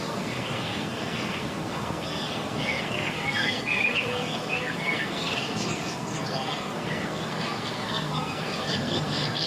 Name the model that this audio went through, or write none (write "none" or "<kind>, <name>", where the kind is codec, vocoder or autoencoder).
codec, SNAC